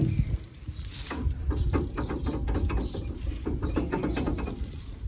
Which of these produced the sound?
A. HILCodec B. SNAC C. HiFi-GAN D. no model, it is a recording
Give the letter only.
D